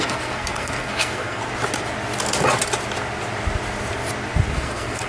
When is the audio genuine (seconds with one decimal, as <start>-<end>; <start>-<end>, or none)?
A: 1.4-4.5